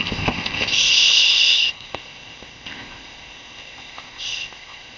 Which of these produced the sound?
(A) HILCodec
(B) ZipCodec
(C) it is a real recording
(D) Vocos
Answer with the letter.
B